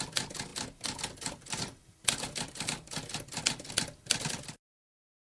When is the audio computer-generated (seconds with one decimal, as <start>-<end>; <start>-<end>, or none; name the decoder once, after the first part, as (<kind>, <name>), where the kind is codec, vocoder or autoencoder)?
none